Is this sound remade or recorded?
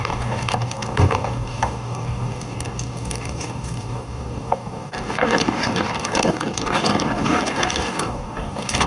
remade